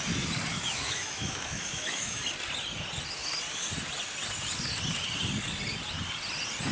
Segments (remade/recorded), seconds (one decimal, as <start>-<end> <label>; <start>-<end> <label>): 0.0-0.5 recorded; 0.5-2.2 remade; 2.2-6.7 recorded